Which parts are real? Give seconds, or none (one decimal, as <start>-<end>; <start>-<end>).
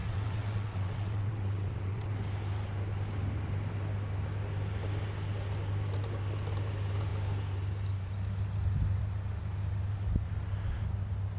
2.2-11.4